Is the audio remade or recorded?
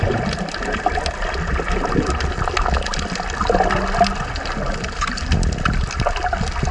recorded